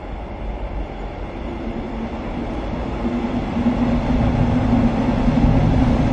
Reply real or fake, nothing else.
real